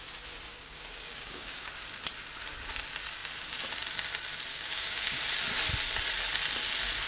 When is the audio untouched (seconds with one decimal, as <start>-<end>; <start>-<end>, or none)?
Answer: 0.0-0.5; 1.7-4.5; 5.2-7.1